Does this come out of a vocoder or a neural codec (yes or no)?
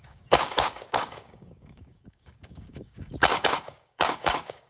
yes